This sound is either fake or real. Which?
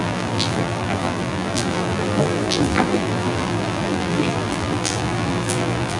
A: fake